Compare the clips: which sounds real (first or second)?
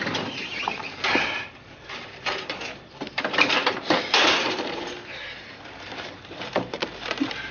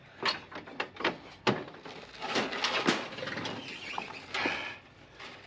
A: second